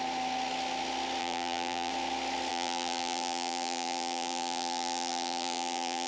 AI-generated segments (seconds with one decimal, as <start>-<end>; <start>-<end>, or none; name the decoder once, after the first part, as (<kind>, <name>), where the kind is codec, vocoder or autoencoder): 1.2-1.9 (vocoder, BigVGAN v2); 2.5-6.1